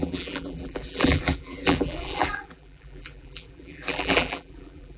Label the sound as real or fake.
fake